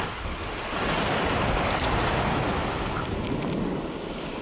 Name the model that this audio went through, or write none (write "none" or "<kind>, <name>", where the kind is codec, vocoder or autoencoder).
none